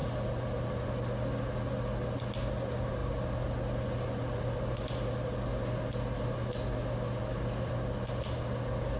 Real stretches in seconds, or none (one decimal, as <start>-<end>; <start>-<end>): 0.0-9.0